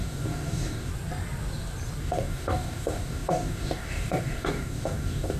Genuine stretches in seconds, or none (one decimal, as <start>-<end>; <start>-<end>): 0.9-2.0